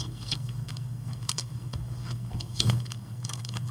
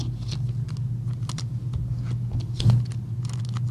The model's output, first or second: first